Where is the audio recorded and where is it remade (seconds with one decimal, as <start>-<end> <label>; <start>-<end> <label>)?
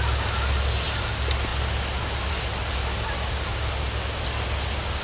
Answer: 0.0-5.0 recorded